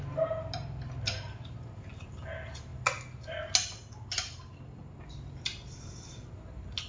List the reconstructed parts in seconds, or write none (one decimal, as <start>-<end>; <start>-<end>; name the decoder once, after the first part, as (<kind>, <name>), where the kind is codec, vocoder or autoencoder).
none

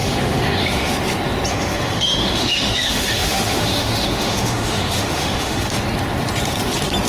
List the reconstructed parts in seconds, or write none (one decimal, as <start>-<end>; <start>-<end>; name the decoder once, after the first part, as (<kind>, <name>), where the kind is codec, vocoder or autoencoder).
0.0-0.9 (autoencoder, DAC-VAE); 1.5-5.8